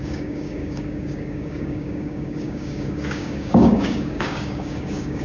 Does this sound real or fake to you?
fake